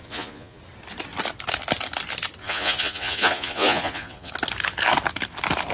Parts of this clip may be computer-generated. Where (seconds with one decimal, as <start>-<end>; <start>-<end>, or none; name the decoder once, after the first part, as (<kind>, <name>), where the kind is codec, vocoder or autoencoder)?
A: 0.0-0.6 (vocoder, Vocos); 2.4-4.3